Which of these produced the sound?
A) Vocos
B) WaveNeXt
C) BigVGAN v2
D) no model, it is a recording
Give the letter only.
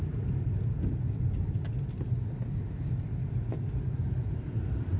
D